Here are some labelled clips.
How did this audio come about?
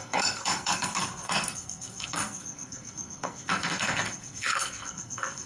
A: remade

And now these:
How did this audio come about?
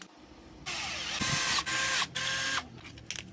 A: recorded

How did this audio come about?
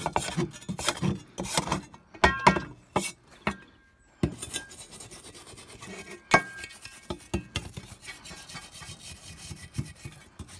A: recorded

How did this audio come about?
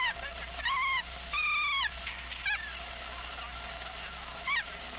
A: recorded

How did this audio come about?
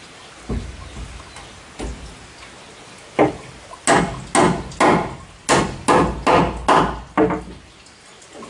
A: recorded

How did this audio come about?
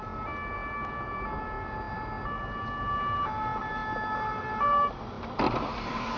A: recorded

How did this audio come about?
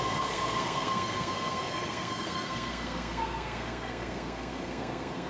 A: remade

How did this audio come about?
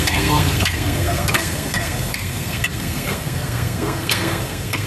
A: remade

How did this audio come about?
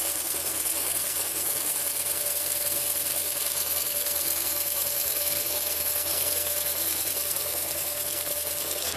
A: remade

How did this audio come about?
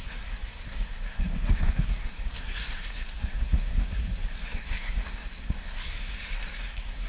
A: remade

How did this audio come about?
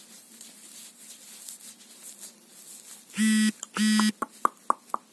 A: recorded